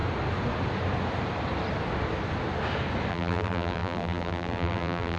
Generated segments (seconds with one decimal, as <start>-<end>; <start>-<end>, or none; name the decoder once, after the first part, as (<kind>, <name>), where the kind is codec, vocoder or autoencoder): 3.1-5.2 (vocoder, BigVGAN v2)